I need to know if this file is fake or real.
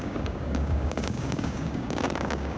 fake